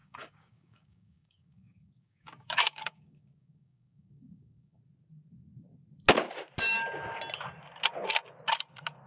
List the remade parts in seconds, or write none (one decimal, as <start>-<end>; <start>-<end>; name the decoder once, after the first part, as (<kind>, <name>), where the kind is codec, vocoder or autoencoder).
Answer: 0.0-4.8 (codec, DAC)